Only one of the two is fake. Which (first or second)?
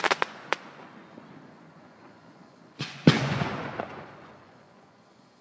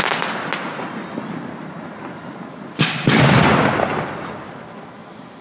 first